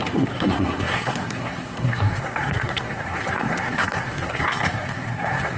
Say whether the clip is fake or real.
fake